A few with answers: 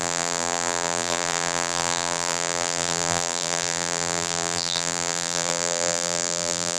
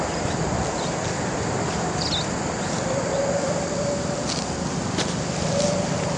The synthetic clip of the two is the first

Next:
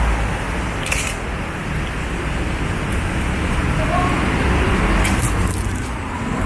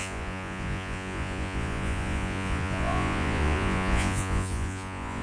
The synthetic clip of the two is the second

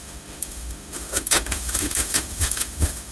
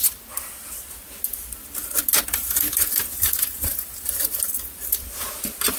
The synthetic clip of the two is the first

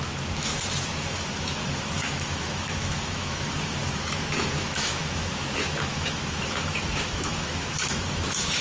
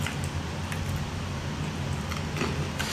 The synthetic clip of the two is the first